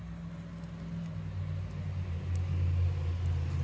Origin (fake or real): real